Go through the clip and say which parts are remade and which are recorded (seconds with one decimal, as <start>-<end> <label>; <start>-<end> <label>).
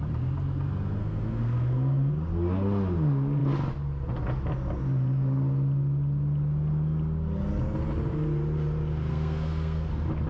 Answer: 0.0-1.0 recorded; 1.0-2.1 remade; 2.1-9.1 recorded; 9.1-9.9 remade; 9.9-10.3 recorded